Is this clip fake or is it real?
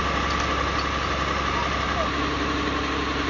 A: real